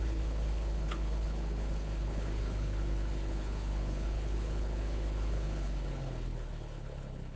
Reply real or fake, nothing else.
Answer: fake